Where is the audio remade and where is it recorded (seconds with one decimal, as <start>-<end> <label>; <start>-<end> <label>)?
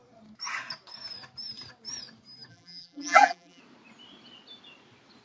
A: 0.0-2.5 recorded; 2.5-3.6 remade; 3.6-5.2 recorded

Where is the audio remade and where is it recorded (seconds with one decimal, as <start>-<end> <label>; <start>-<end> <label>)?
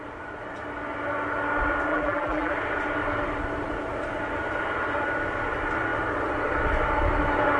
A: 0.0-1.9 recorded; 1.9-2.5 remade; 2.5-7.6 recorded